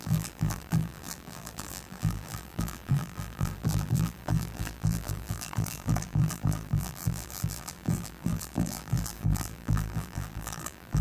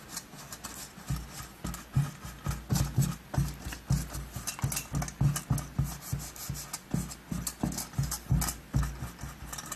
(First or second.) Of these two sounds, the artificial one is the first